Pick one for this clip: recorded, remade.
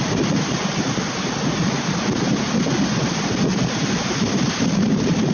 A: recorded